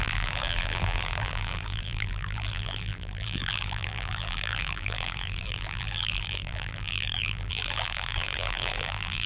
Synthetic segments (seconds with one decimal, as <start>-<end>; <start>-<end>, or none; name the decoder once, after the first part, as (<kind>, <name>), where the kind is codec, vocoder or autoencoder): 0.0-9.3 (vocoder, BigVGAN v2)

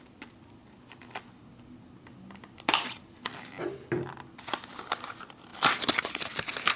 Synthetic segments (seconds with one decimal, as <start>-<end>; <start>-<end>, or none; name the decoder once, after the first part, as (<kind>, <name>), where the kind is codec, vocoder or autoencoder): 0.0-0.6 (vocoder, BigVGAN v2); 4.7-5.5

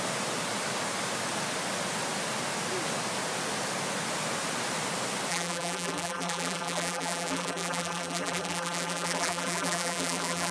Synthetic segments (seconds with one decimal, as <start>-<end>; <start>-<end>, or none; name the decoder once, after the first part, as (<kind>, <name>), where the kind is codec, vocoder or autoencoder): 5.3-10.5 (vocoder, BigVGAN v2)